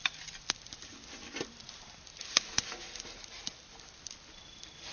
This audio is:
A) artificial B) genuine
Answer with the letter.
B